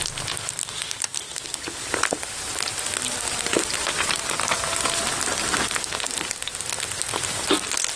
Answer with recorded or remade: recorded